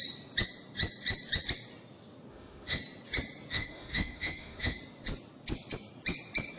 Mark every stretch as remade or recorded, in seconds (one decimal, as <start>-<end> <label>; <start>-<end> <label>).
0.0-2.3 recorded; 2.3-2.8 remade; 2.8-3.5 recorded; 3.5-4.8 remade; 4.8-6.6 recorded

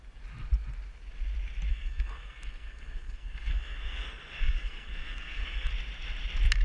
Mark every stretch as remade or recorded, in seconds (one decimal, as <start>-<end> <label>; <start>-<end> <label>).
0.0-1.7 recorded; 1.7-5.7 remade; 5.7-6.6 recorded